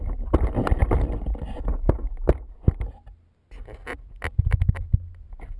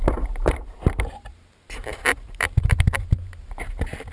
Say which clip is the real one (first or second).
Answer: first